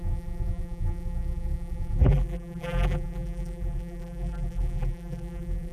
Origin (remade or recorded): remade